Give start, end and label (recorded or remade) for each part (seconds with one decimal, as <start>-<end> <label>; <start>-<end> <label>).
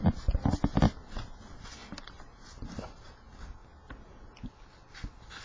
0.0-5.4 recorded